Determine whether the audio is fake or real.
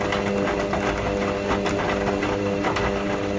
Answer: real